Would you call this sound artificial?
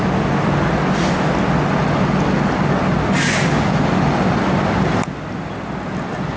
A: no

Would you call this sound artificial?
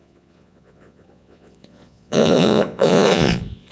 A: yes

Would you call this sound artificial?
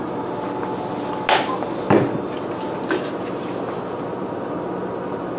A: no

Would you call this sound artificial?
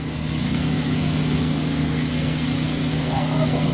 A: yes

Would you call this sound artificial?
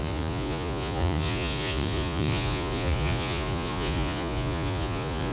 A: yes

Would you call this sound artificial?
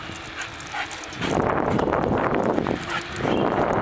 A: no